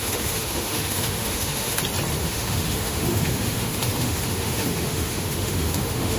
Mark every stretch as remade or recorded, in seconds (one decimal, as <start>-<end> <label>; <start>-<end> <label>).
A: 0.0-1.8 remade; 1.8-2.2 recorded; 2.2-6.2 remade